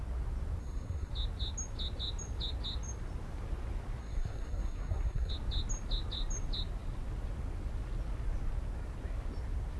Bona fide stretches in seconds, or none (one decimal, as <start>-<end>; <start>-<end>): 0.0-0.6; 1.1-4.0; 5.3-9.8